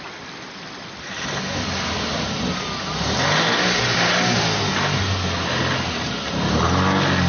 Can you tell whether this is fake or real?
real